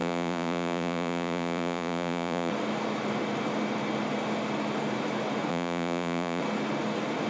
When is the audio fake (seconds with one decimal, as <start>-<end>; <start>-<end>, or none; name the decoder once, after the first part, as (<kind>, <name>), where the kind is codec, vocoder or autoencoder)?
0.0-2.5 (vocoder, Vocos); 5.5-6.4

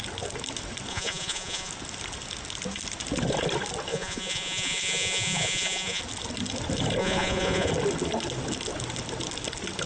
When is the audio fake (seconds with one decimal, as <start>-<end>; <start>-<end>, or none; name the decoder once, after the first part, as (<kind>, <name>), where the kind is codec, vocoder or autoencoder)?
0.9-1.7 (vocoder, Vocos); 3.9-6.0; 7.0-7.7

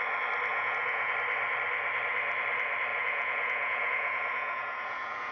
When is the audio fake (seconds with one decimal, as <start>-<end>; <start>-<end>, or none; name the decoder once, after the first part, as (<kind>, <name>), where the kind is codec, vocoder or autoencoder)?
0.5-1.1 (vocoder, Vocos); 2.9-5.3

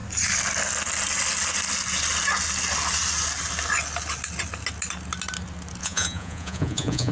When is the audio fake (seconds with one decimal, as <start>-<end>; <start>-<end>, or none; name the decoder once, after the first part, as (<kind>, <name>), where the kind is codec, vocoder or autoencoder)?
5.8-7.1 (vocoder, Vocos)

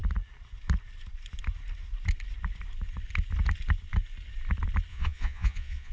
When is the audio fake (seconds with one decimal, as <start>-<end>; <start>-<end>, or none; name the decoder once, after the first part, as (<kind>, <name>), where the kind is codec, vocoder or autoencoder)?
4.9-5.9 (vocoder, Vocos)

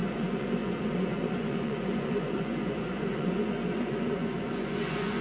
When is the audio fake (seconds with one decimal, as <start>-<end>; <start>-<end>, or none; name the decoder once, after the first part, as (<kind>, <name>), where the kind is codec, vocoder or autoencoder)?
0.0-5.2 (vocoder, Vocos)

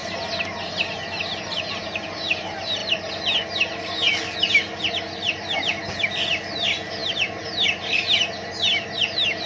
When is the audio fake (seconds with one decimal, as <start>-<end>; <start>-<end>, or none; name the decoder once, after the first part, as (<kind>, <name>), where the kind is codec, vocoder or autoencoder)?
none